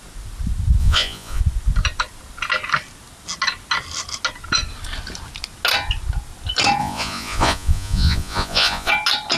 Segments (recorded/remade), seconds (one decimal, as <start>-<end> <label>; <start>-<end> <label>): 0.0-0.8 recorded; 0.8-1.4 remade; 1.4-6.8 recorded; 6.8-8.9 remade; 8.9-9.4 recorded